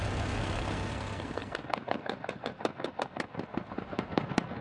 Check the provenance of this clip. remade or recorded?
remade